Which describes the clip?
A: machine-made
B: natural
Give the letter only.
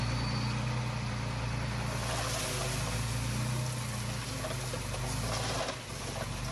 B